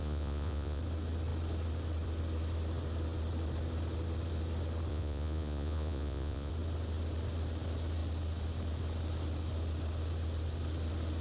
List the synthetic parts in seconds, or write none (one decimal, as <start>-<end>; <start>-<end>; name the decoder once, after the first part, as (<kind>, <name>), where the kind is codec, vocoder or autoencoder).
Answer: 0.0-0.8 (vocoder, Vocos); 4.9-6.5